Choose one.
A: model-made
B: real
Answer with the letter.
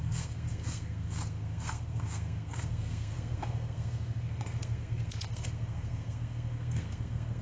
A